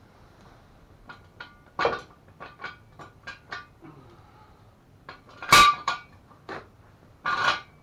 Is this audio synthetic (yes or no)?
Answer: yes